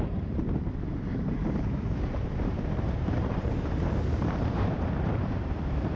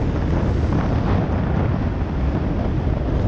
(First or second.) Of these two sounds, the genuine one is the second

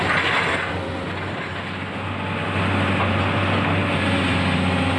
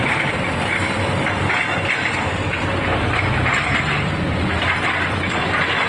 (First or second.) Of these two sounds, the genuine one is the first